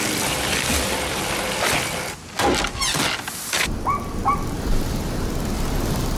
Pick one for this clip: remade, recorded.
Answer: recorded